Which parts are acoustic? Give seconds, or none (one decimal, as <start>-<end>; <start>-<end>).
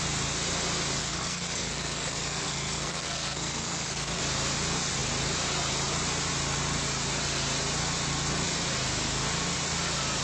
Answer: 0.0-1.0; 4.2-10.2